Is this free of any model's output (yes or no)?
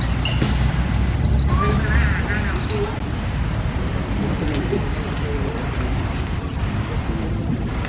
yes